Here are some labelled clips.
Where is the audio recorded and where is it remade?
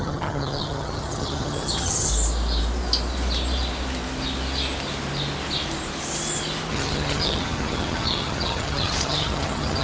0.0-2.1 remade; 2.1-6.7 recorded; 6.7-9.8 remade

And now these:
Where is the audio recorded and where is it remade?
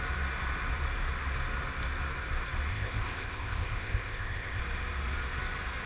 0.0-2.7 recorded; 2.7-4.6 remade; 4.6-5.9 recorded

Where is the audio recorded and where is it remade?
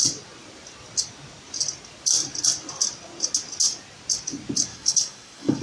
0.0-4.7 recorded; 4.7-5.6 remade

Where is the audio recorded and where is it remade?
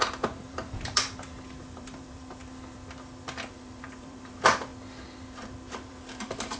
0.0-2.4 remade; 2.4-3.5 recorded; 3.5-4.7 remade; 4.7-5.7 recorded; 5.7-6.6 remade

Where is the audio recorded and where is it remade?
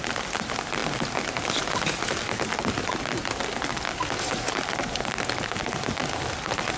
0.0-6.8 recorded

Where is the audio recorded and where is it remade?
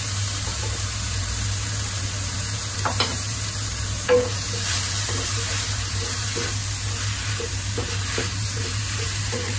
0.0-6.6 remade; 6.6-7.3 recorded; 7.3-9.6 remade